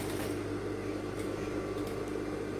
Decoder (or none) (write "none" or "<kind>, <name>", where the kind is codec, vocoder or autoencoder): none